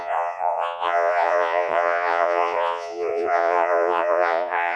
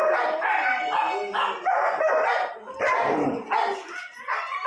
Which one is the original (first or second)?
second